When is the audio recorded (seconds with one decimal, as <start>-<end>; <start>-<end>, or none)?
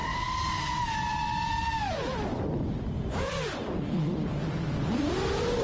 0.0-2.3; 5.1-5.6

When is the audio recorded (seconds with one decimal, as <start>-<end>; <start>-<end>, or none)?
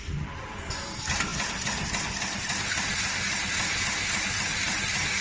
0.0-5.2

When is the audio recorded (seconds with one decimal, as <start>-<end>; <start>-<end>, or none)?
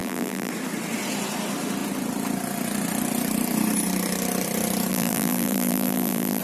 0.5-4.9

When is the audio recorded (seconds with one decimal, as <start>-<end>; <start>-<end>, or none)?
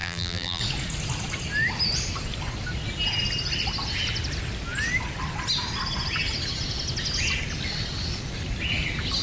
0.6-9.2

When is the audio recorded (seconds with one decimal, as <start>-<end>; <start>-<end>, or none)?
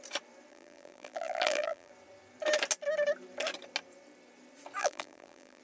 0.0-0.5; 1.9-4.8